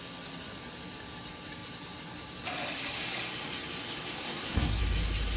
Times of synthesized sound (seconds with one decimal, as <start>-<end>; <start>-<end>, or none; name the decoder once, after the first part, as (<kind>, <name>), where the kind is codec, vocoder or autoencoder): 4.2-4.8 (codec, SNAC)